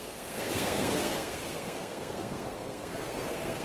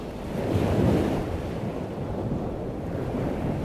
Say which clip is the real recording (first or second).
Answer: second